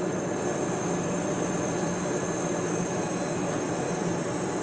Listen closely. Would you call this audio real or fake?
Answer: real